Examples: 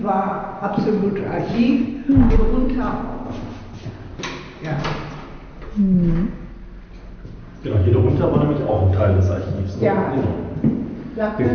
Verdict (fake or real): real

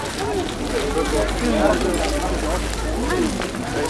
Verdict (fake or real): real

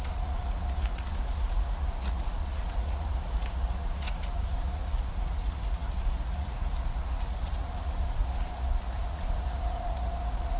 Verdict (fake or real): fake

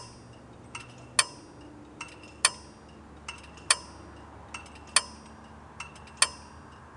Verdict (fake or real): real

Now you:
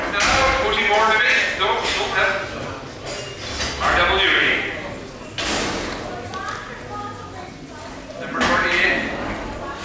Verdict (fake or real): real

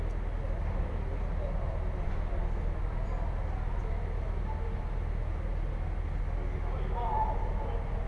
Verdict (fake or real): real